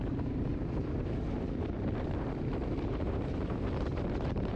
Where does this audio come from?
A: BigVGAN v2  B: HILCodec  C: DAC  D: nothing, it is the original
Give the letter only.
A